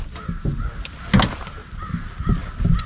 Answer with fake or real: real